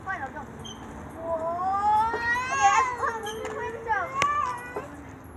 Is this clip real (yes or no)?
yes